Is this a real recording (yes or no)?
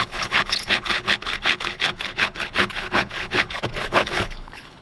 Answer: no